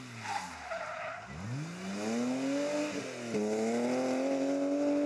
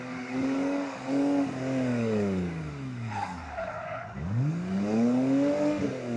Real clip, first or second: first